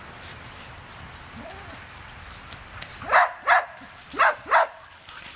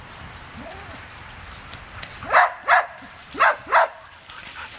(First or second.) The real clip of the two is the first